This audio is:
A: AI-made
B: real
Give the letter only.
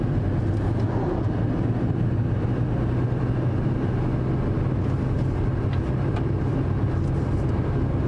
B